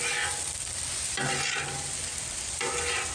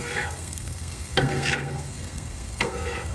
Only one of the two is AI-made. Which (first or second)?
second